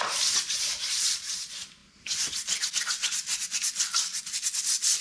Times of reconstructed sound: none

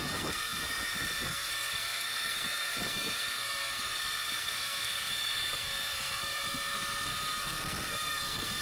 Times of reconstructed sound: 0.0-8.6 (codec, SNAC)

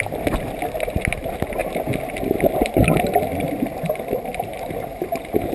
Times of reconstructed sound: none

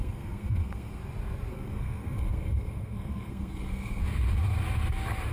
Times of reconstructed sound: 0.0-1.0 (codec, SNAC); 1.5-4.0

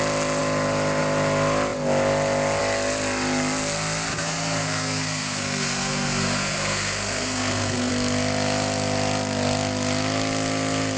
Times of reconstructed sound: 4.1-7.9 (codec, SNAC)